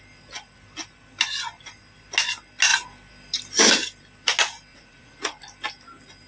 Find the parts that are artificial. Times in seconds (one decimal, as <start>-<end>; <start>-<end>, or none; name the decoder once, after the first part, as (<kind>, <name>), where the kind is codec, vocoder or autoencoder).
4.7-5.4 (vocoder, Vocos)